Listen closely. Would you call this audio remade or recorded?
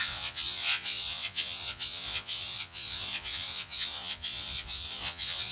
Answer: remade